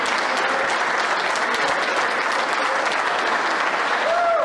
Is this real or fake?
real